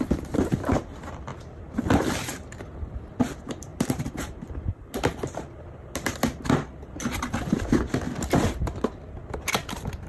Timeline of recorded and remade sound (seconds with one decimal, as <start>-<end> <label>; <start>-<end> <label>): 0.0-3.7 recorded; 3.7-4.7 remade; 4.7-10.1 recorded